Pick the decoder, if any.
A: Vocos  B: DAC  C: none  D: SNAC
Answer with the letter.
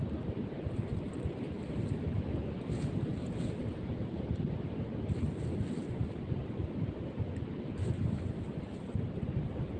C